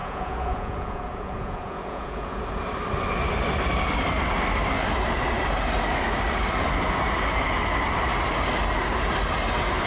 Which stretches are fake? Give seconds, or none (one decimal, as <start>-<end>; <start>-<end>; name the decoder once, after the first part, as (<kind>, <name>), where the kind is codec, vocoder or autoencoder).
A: 0.0-2.4 (vocoder, Vocos)